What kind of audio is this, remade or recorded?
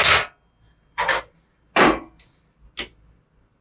recorded